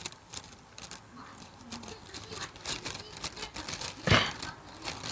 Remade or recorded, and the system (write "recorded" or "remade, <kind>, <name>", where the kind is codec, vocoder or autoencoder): recorded